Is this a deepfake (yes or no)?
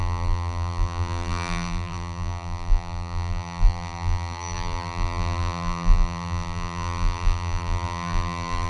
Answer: yes